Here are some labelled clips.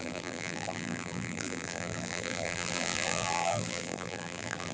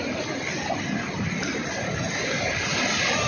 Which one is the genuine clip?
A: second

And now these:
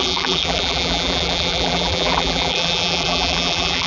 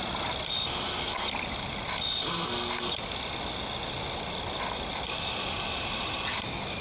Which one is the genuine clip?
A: second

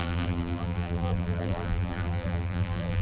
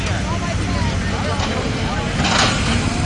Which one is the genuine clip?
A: second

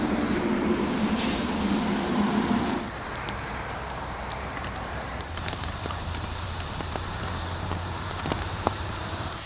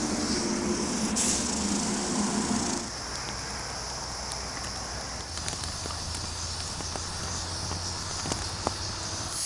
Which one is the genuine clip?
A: second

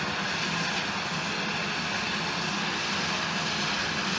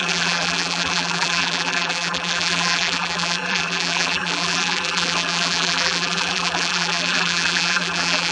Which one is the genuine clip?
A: first